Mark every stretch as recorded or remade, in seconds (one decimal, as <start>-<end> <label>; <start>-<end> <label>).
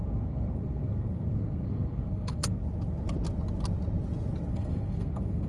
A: 0.0-2.6 remade; 2.6-4.5 recorded; 4.5-5.5 remade